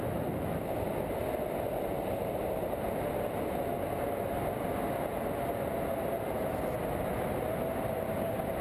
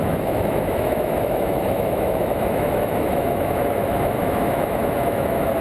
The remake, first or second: second